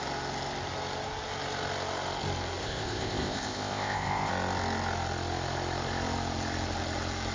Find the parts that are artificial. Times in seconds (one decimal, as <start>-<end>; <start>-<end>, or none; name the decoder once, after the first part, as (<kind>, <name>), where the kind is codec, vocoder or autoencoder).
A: 2.6-4.3 (codec, ZipCodec)